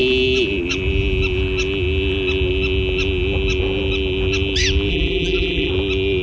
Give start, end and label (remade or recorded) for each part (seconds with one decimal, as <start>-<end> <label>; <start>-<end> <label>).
0.0-4.9 recorded; 4.9-5.7 remade; 5.7-6.2 recorded

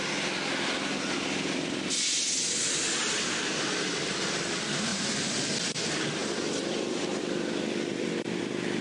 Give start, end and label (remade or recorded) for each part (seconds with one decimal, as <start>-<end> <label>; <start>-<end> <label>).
0.0-4.9 recorded; 4.9-5.8 remade; 5.8-6.2 recorded; 6.2-8.4 remade; 8.4-8.8 recorded

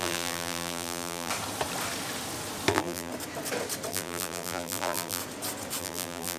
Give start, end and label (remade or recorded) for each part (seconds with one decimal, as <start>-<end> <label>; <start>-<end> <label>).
0.0-1.3 remade; 1.3-2.7 recorded; 2.7-3.1 remade; 3.1-3.9 recorded; 3.9-5.2 remade; 5.2-5.8 recorded; 5.8-6.4 remade

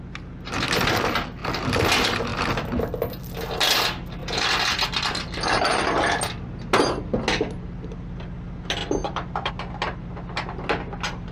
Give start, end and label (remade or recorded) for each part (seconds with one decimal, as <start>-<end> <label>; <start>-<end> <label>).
0.0-1.4 recorded; 1.4-1.9 remade; 1.9-2.3 recorded; 2.3-3.4 remade; 3.4-4.2 recorded; 4.2-5.8 remade; 5.8-8.8 recorded; 8.8-9.5 remade; 9.5-11.3 recorded

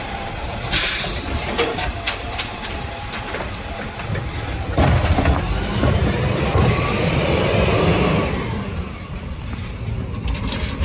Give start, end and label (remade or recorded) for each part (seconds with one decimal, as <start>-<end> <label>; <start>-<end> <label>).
0.0-3.9 remade; 3.9-6.0 recorded; 6.0-7.1 remade; 7.1-10.8 recorded

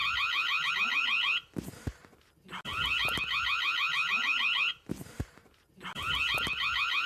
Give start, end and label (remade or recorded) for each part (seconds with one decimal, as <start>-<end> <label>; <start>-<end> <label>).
0.0-4.7 recorded; 4.7-5.7 remade; 5.7-7.1 recorded